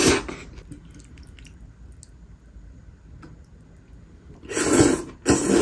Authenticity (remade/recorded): recorded